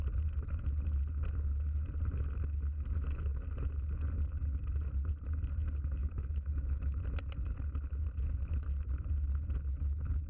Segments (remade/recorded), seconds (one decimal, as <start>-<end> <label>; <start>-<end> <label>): 0.0-6.0 recorded; 6.0-7.0 remade; 7.0-10.3 recorded